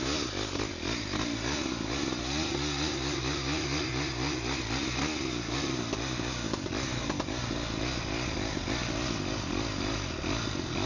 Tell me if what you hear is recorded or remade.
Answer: recorded